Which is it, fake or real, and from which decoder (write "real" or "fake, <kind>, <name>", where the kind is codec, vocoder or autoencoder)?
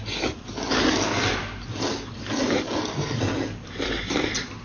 real